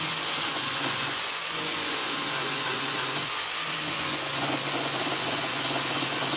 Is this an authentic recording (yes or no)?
no